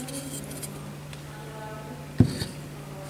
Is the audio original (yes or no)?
yes